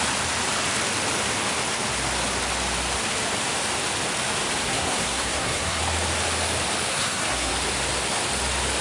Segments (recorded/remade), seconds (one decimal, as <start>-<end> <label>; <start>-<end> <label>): 0.0-4.6 recorded; 4.6-5.8 remade; 5.8-6.9 recorded; 6.9-7.5 remade; 7.5-8.8 recorded